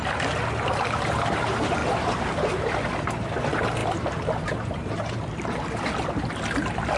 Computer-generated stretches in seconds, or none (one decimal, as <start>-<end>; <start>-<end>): 3.8-5.6